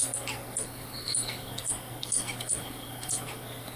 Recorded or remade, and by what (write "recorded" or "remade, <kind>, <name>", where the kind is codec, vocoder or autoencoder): remade, codec, SNAC